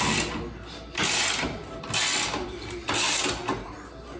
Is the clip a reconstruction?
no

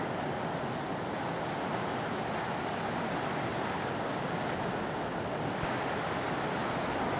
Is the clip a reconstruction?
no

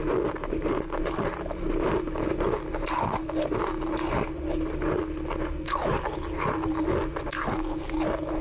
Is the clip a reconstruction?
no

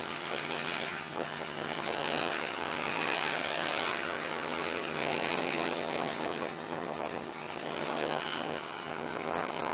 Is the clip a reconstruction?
yes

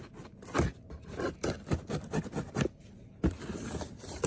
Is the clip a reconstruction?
no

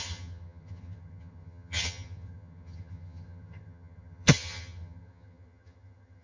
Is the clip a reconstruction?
yes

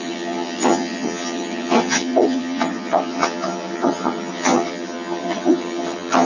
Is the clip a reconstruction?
yes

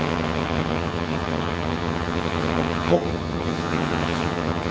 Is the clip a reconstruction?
yes